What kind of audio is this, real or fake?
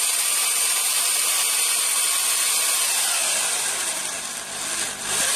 real